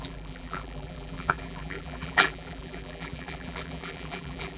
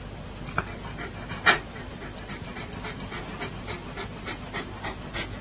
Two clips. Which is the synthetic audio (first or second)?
first